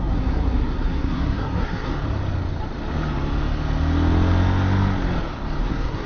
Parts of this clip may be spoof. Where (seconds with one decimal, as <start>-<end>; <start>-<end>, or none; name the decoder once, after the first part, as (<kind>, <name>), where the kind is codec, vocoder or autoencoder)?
0.0-1.9 (codec, SNAC); 5.6-6.1